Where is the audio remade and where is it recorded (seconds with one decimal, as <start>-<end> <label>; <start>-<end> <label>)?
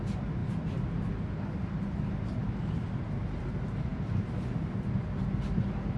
0.0-6.0 recorded